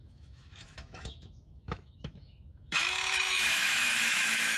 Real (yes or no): no